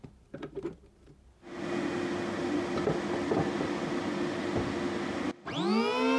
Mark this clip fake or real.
real